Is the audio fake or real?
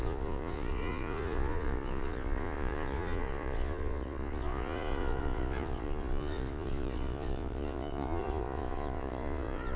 fake